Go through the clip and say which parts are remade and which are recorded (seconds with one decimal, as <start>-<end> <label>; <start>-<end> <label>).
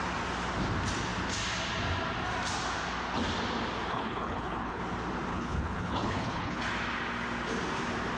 0.0-3.9 recorded; 3.9-4.8 remade; 4.8-5.3 recorded; 5.3-6.6 remade; 6.6-8.2 recorded